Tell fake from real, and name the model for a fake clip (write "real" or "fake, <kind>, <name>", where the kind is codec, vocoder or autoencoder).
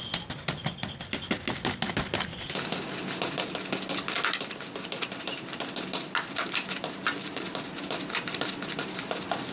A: real